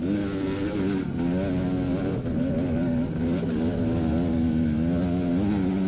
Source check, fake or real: real